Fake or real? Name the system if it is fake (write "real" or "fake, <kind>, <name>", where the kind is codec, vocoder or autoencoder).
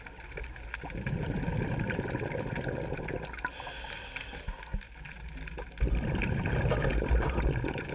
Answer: real